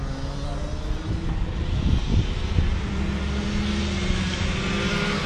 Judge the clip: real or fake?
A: real